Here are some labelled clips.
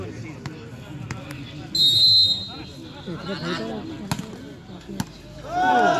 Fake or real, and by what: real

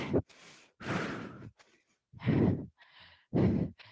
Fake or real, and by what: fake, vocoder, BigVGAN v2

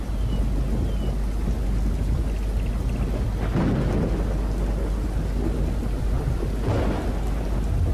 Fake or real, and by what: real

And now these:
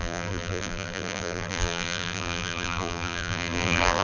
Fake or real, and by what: fake, vocoder, BigVGAN v2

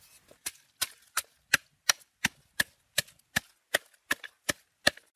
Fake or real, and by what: real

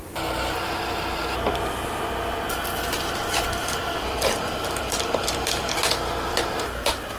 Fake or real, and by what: fake, vocoder, BigVGAN v2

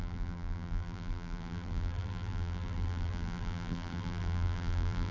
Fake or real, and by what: fake, vocoder, BigVGAN v2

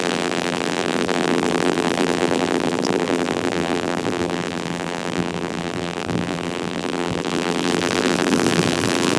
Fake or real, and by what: fake, vocoder, BigVGAN v2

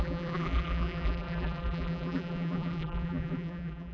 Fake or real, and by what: fake, vocoder, BigVGAN v2